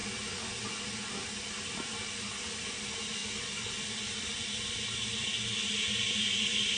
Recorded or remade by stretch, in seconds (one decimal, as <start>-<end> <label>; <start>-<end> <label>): 0.0-6.8 recorded